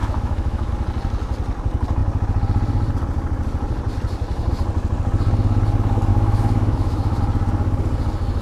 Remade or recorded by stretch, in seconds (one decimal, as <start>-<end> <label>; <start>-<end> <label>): 0.0-0.7 remade; 0.7-6.1 recorded; 6.1-7.2 remade; 7.2-8.4 recorded